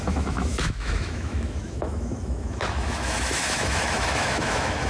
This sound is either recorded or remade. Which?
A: remade